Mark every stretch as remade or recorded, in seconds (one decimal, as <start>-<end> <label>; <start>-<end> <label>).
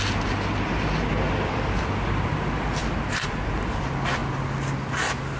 0.0-1.1 remade; 1.1-1.8 recorded; 1.8-2.8 remade; 2.8-3.5 recorded; 3.5-4.2 remade; 4.2-5.4 recorded